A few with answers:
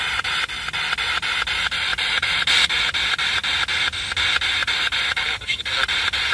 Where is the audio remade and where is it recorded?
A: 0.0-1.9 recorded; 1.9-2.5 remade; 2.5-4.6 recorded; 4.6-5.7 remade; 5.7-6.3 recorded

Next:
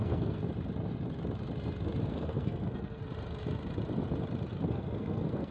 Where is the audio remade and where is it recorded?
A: 0.0-0.4 remade; 0.4-2.0 recorded; 2.0-3.0 remade; 3.0-4.5 recorded; 4.5-5.5 remade